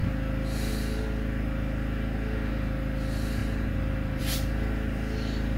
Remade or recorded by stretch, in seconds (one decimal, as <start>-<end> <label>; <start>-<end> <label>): 0.0-5.6 recorded